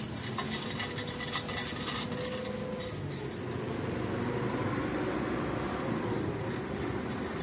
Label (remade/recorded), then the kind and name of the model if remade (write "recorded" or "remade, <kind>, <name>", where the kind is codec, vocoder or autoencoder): recorded